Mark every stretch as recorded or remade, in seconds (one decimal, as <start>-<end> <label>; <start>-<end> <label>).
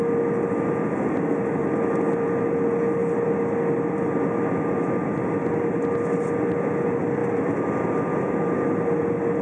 0.0-9.4 recorded